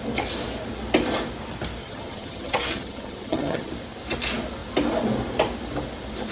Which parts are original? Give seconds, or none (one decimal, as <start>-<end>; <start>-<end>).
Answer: 0.0-1.8; 3.7-6.3

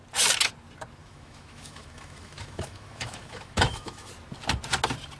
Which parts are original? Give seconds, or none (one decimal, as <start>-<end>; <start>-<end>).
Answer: 0.0-1.0; 4.1-5.2

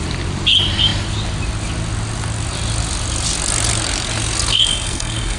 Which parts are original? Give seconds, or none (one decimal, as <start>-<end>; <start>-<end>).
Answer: 0.0-4.5

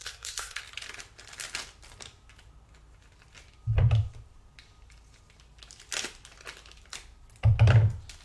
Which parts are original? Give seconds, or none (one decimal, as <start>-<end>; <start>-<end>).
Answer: 0.6-8.2

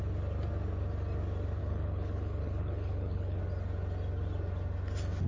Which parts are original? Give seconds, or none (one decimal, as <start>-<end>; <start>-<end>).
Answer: 0.0-1.6; 3.4-5.3

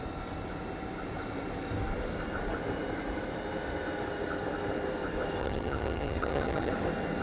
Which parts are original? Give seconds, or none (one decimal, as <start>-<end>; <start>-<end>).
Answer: 0.0-5.4; 6.7-7.2

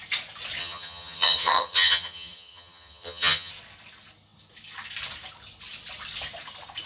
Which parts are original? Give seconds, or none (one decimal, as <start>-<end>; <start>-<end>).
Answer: 0.0-0.6; 3.5-6.9